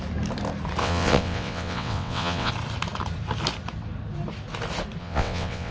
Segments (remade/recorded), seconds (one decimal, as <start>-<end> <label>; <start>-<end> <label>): 0.0-0.8 recorded; 0.8-2.5 remade; 2.5-5.0 recorded; 5.0-5.7 remade

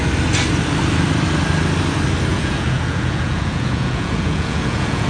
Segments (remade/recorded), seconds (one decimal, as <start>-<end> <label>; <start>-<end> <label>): 0.0-2.3 recorded; 2.3-5.1 remade